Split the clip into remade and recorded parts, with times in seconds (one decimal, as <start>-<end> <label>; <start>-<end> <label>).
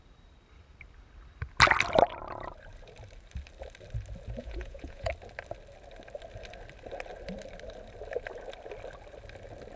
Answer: 0.0-4.4 recorded; 4.4-5.1 remade; 5.1-9.8 recorded